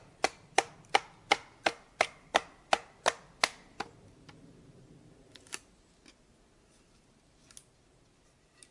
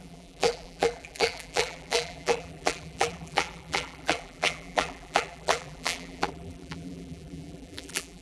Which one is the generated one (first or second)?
second